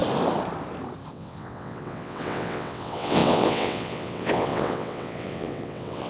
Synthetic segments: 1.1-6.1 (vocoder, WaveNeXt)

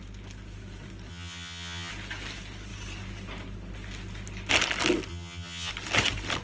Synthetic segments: 1.1-1.9 (vocoder, HiFi-GAN); 5.1-5.7

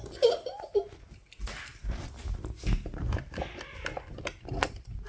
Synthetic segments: none

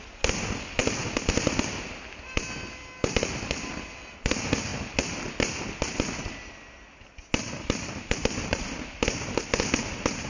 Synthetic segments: none

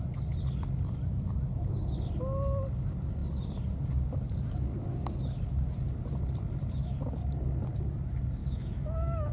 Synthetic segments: 8.4-9.3 (autoencoder, DAC-VAE)

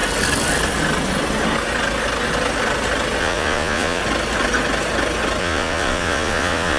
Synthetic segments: 3.2-4.0 (vocoder, Vocos); 5.4-6.8

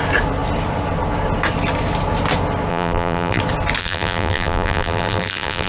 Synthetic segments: 2.7-3.4 (vocoder, BigVGAN v2); 3.8-5.7

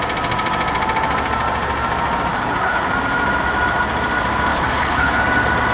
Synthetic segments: 2.3-2.9 (codec, HILCodec); 4.5-5.2